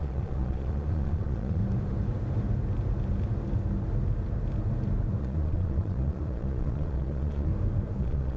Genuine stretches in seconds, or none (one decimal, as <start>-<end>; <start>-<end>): 1.6-5.2; 7.5-8.0